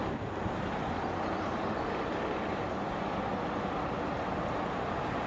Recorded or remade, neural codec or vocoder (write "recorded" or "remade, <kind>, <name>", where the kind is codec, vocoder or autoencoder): recorded